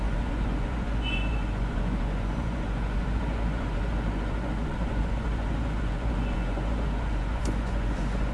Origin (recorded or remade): remade